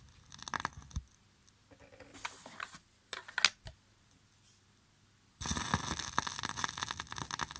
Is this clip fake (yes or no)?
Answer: no